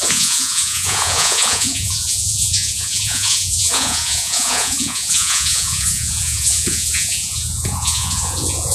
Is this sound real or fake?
fake